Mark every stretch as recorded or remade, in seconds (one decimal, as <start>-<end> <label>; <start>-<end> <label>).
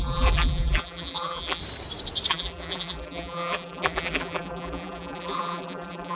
0.0-1.6 remade; 1.6-2.3 recorded; 2.3-6.2 remade